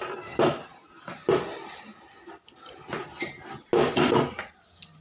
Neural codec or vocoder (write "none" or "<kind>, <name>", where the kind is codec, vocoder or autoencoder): none